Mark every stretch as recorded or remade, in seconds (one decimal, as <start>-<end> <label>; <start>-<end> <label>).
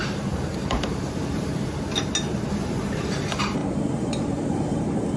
0.0-1.5 remade; 1.5-2.4 recorded; 2.4-5.2 remade